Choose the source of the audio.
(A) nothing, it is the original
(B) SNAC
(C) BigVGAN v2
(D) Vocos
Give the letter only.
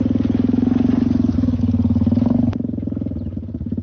A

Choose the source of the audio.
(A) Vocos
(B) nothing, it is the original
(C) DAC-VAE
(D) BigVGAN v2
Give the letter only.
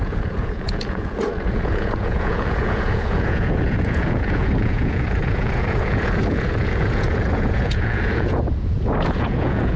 A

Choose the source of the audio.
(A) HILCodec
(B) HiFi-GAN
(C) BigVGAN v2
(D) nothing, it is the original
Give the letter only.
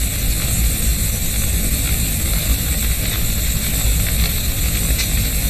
D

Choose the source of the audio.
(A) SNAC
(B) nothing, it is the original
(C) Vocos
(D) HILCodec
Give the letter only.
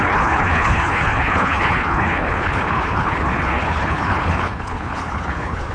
D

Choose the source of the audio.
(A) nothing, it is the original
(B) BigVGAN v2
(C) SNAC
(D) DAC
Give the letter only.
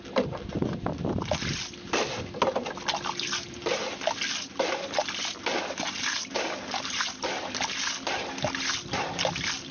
A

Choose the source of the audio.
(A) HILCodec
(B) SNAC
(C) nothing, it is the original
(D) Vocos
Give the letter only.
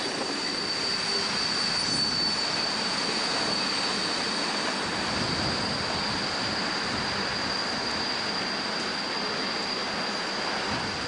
C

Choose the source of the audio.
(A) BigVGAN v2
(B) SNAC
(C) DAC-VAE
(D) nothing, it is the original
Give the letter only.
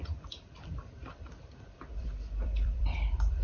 A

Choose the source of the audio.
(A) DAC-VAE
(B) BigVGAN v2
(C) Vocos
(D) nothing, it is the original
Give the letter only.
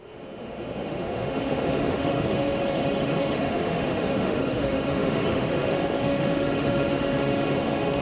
A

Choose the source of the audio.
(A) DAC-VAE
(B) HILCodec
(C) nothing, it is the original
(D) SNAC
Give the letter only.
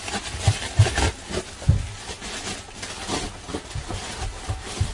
C